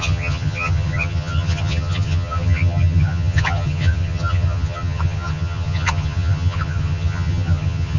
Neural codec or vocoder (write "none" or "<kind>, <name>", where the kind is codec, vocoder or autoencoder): vocoder, HiFi-GAN